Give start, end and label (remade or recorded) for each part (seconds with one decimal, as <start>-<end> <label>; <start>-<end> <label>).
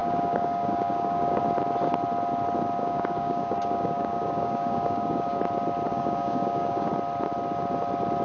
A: 0.0-1.4 remade; 1.4-2.8 recorded; 2.8-5.4 remade; 5.4-5.9 recorded; 5.9-6.9 remade; 6.9-8.2 recorded